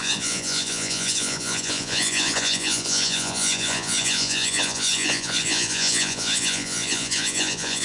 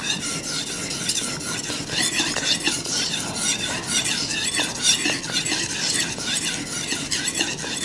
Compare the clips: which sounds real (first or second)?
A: second